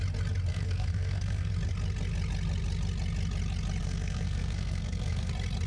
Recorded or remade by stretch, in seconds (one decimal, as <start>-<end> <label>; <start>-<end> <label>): 0.0-0.5 recorded; 0.5-1.5 remade; 1.5-3.8 recorded; 3.8-5.3 remade; 5.3-5.7 recorded